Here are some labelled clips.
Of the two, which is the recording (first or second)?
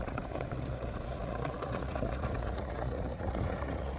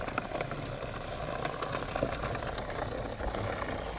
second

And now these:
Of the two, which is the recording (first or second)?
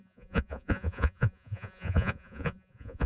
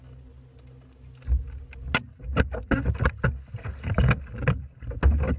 second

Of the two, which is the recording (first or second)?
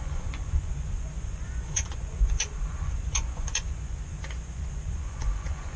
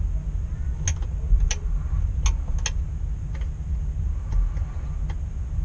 second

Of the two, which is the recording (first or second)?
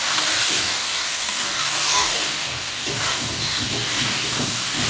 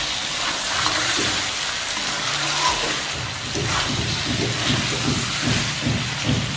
second